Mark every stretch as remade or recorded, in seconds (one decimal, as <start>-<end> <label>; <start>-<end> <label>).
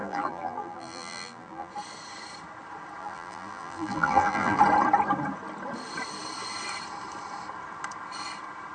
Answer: 0.0-1.7 remade; 1.7-3.0 recorded; 3.0-4.6 remade; 4.6-8.7 recorded